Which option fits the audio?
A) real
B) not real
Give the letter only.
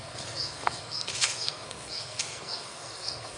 B